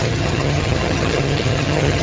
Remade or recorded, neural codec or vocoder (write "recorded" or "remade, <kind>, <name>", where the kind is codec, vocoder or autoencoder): remade, vocoder, HiFi-GAN